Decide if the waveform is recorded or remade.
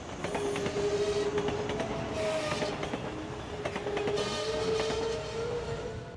recorded